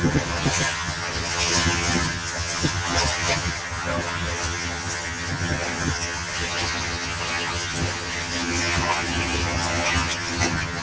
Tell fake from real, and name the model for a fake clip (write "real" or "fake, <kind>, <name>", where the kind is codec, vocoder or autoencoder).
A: fake, vocoder, HiFi-GAN